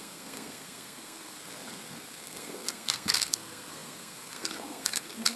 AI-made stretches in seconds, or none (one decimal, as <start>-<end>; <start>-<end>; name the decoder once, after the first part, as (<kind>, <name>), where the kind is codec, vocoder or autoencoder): 0.0-5.4 (codec, SNAC)